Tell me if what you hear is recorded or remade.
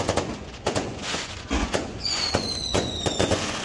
remade